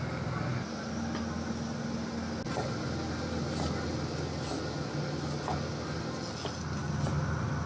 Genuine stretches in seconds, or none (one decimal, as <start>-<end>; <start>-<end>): 0.0-7.7